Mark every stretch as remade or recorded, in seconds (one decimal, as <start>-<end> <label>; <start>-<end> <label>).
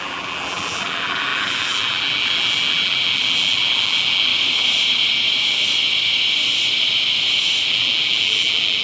0.0-4.3 remade; 4.3-7.7 recorded; 7.7-8.8 remade